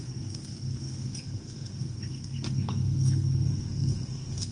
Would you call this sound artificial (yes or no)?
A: yes